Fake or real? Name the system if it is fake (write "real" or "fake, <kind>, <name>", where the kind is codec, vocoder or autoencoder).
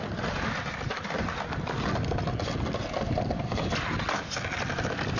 real